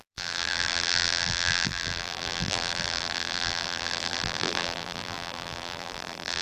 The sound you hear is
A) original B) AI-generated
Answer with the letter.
B